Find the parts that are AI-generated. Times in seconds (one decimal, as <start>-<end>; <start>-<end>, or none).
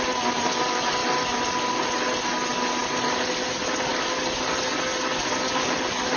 none